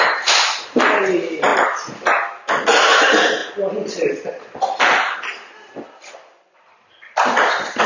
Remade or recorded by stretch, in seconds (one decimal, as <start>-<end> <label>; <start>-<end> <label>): 0.0-3.4 remade; 3.4-6.0 recorded; 6.0-7.9 remade